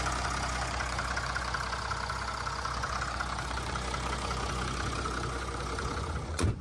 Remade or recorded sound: remade